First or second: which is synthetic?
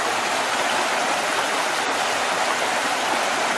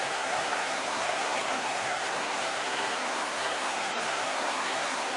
second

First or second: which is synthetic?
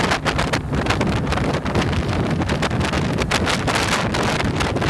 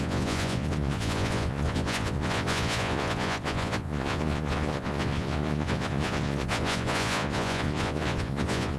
second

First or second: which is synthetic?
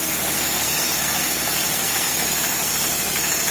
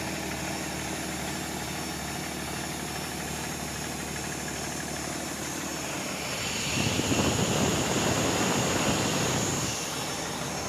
first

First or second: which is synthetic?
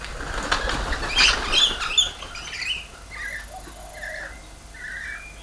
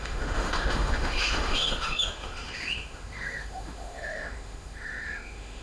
second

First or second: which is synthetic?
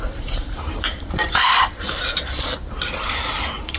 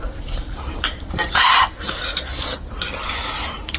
first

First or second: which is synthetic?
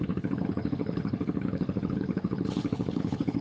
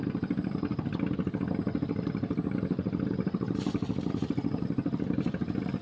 first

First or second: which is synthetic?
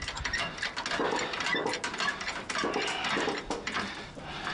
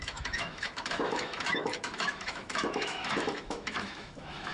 second